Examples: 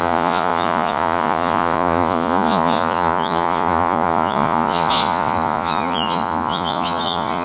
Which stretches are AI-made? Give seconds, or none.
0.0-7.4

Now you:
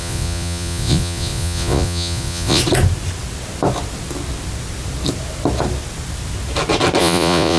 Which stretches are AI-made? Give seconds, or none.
0.0-2.6; 7.0-7.6

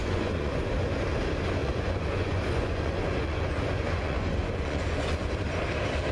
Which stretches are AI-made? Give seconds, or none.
0.0-0.7; 1.6-5.3

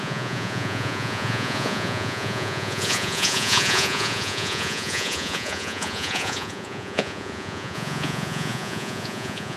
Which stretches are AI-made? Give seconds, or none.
0.0-9.6